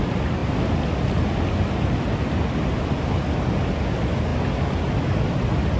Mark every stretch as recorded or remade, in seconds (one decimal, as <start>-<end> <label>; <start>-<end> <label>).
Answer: 0.0-5.8 recorded